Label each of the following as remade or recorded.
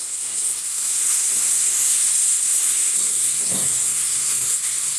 remade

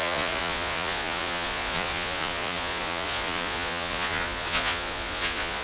remade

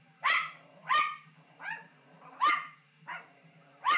remade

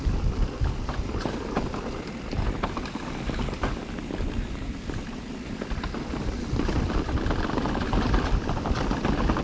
recorded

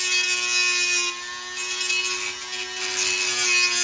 recorded